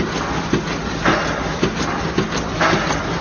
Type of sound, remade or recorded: recorded